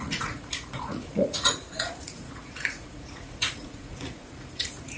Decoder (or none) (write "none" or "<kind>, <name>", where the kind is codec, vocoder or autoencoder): vocoder, Vocos